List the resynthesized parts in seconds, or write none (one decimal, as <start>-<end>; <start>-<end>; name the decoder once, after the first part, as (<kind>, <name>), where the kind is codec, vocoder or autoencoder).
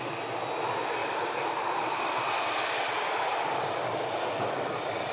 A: 1.0-3.6 (vocoder, BigVGAN v2)